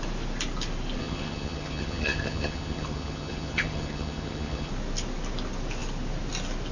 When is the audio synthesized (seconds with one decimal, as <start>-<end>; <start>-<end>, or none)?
1.0-4.7